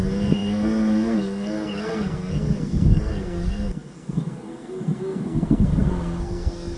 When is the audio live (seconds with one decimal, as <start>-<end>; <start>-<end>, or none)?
none